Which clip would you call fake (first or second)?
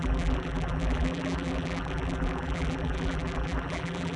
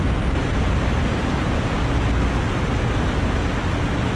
first